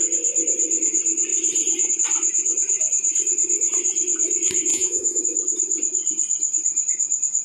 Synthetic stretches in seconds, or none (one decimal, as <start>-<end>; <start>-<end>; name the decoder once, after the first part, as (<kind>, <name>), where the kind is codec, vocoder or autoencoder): 4.7-5.2 (vocoder, Vocos)